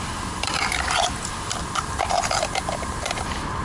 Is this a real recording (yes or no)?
no